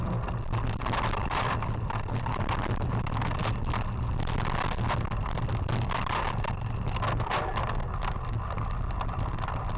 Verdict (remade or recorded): recorded